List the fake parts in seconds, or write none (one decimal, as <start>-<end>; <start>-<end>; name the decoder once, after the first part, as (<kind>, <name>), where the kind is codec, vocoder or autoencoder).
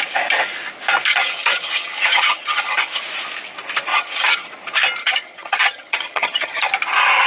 1.1-3.0 (vocoder, HiFi-GAN); 3.9-4.5; 5.0-6.7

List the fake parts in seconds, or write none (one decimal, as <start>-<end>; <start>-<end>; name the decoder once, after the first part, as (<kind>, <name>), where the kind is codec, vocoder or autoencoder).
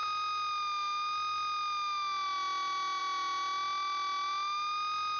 none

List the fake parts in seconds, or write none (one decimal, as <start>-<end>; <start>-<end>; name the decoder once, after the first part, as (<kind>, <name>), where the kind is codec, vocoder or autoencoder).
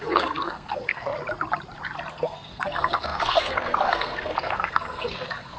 0.0-1.1 (codec, SNAC); 2.1-5.6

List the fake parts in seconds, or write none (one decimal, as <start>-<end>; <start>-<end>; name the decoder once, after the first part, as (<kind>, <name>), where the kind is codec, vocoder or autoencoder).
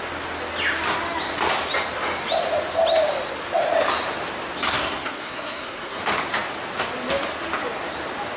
4.7-6.0 (codec, SNAC)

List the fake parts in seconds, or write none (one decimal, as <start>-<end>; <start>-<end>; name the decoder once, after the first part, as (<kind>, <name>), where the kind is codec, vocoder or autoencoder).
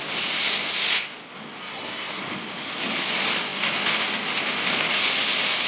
1.6-2.2 (codec, SNAC)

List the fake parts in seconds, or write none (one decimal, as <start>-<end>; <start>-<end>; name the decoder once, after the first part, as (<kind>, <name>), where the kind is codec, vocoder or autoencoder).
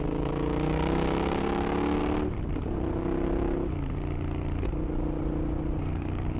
0.0-2.0 (codec, DAC); 5.8-6.4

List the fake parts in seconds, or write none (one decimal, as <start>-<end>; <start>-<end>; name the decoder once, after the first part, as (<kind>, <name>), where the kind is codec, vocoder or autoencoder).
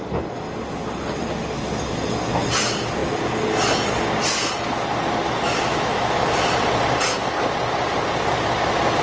5.7-6.4 (autoencoder, DAC-VAE)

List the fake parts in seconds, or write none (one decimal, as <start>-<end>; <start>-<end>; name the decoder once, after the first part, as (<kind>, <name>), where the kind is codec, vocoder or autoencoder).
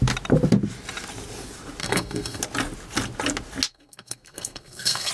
1.8-2.4 (codec, SNAC); 3.7-5.1